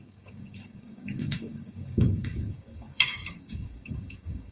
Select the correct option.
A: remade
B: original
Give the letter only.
A